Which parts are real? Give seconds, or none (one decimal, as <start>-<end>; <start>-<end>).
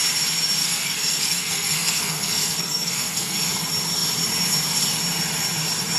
0.0-0.6; 3.5-6.0